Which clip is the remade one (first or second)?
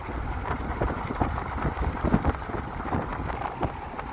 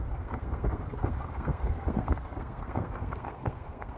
second